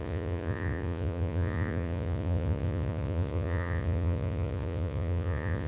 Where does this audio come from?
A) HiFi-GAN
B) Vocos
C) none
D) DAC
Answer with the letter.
B